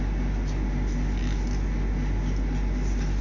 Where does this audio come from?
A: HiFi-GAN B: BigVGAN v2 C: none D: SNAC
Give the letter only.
C